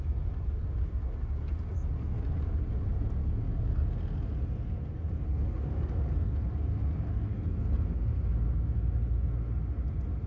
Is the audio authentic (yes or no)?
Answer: yes